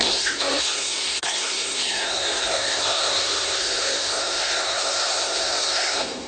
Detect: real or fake fake